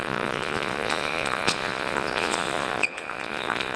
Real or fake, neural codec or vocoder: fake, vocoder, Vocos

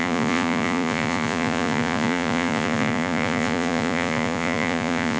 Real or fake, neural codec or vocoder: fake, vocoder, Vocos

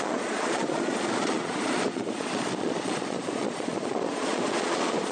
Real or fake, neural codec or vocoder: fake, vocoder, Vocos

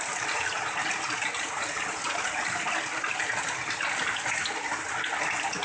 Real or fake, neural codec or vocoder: real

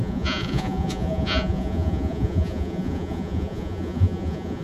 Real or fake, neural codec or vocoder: fake, vocoder, Vocos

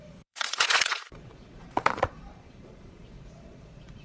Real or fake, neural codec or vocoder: fake, vocoder, Vocos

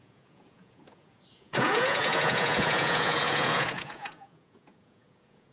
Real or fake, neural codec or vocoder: fake, vocoder, Vocos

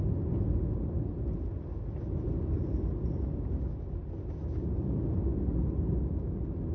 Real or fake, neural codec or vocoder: real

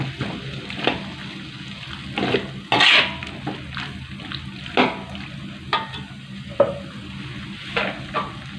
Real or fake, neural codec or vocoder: real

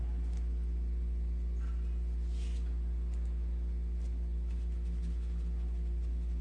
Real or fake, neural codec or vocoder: real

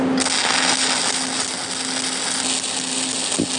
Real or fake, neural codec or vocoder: real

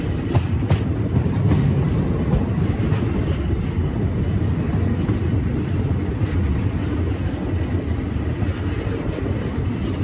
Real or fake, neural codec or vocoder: real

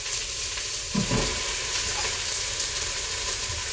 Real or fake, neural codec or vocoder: real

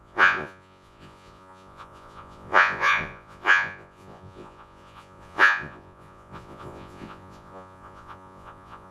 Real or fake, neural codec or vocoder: fake, vocoder, Vocos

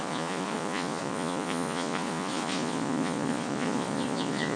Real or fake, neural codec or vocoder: fake, vocoder, Vocos